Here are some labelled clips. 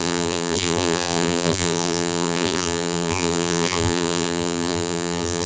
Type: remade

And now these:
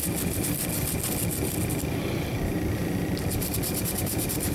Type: remade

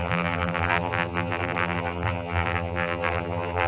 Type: remade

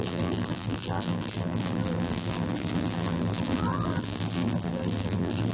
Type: remade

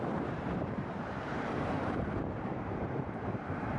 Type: remade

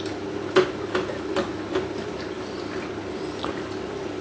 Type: recorded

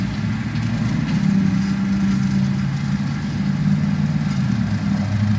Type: recorded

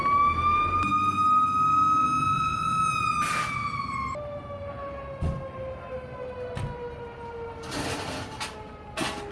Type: recorded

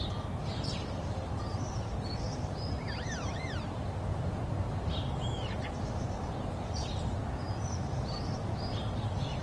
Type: remade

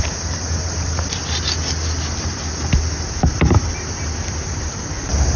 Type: recorded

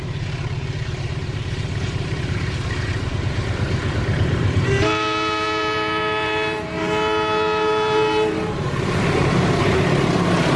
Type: remade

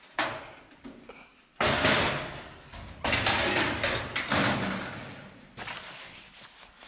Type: recorded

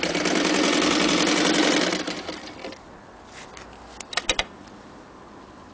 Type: recorded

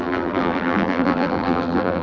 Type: remade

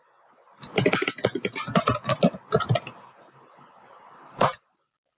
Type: recorded